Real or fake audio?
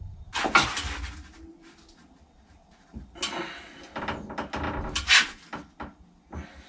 real